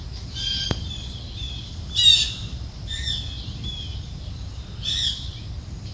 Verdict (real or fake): real